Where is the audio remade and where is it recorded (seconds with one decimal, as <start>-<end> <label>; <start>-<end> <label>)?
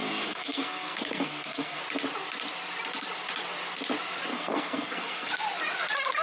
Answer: 0.0-1.8 remade; 1.8-4.3 recorded; 4.3-5.3 remade; 5.3-6.2 recorded